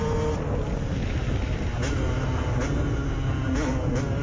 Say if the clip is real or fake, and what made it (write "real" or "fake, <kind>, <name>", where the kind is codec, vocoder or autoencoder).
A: real